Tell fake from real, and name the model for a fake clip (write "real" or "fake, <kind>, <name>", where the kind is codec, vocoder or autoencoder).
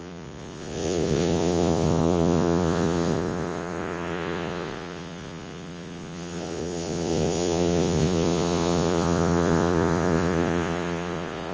fake, vocoder, Vocos